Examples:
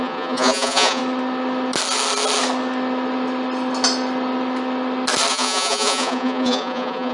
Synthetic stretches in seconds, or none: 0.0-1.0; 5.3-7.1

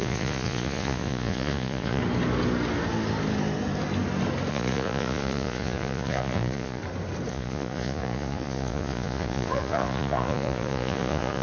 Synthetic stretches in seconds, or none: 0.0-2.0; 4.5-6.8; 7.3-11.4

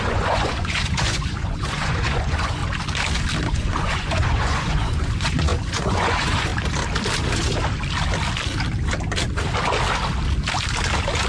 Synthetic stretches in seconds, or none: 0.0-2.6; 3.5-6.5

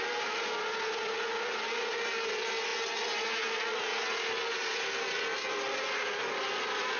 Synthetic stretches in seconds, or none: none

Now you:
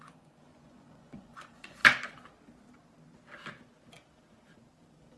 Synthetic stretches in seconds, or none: 0.0-1.8

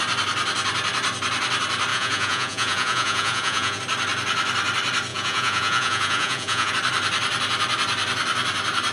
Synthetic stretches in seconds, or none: 1.9-3.8; 5.1-6.7

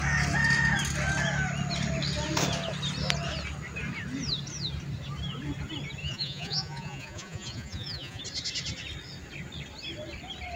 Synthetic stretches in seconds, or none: 6.0-8.2